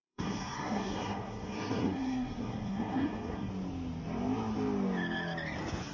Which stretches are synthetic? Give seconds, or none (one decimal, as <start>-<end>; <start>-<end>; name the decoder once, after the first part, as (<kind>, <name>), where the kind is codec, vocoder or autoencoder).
0.0-3.5 (codec, SNAC)